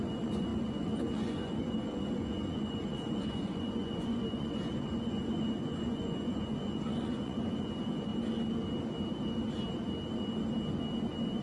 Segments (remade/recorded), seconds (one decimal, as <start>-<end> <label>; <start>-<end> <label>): 0.0-8.1 remade; 8.1-11.4 recorded